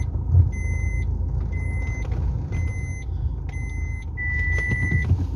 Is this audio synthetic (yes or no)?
no